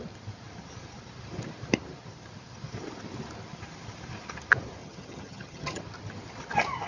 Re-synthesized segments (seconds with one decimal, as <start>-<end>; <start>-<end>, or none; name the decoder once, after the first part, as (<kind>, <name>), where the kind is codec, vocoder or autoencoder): 4.8-5.8 (vocoder, HiFi-GAN)